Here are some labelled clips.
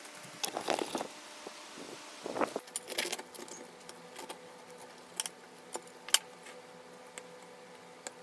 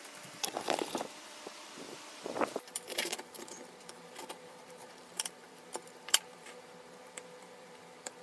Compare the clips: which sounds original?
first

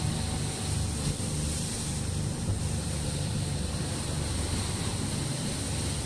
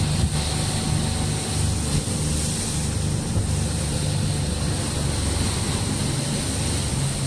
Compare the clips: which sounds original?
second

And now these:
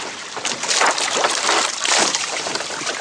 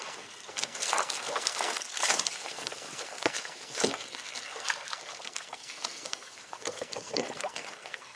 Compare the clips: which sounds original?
first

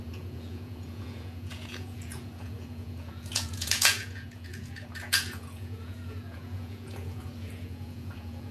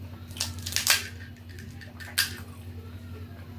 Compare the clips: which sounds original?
second